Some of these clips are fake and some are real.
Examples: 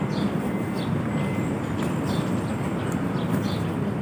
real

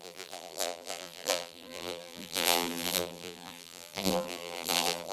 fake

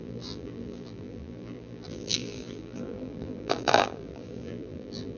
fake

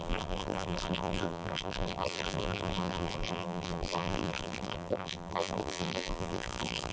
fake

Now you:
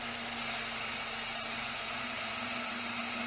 real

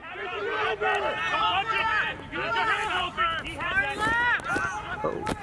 real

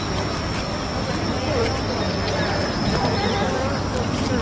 fake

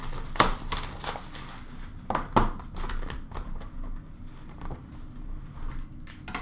real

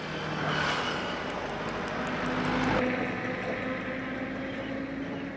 real